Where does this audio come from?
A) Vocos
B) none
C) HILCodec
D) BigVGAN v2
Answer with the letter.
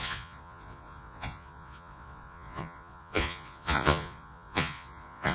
A